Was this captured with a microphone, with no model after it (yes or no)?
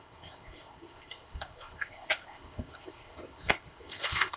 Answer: no